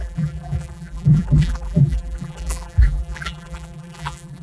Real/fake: fake